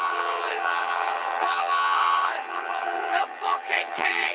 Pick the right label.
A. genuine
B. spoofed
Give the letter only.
B